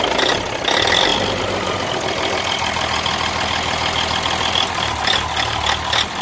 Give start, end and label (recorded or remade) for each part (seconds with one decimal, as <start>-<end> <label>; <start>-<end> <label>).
0.0-6.2 recorded